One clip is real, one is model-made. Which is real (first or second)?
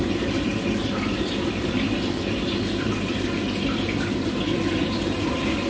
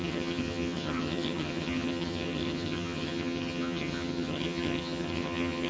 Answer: first